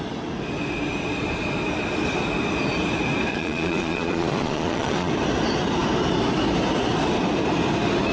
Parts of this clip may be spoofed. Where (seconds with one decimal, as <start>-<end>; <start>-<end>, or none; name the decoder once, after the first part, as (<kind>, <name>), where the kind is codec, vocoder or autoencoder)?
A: 3.3-5.1 (vocoder, Vocos)